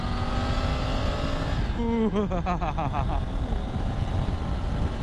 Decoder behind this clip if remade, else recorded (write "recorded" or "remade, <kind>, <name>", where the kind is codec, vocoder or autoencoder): recorded